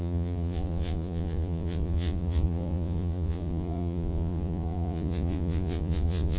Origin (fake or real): fake